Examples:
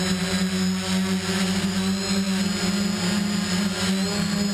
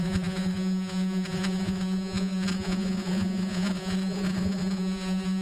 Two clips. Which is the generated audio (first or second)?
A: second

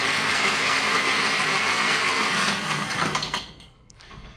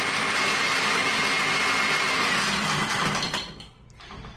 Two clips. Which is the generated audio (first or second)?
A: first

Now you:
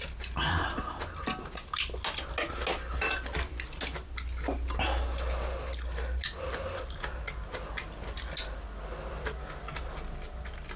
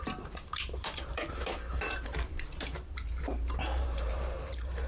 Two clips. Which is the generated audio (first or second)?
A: second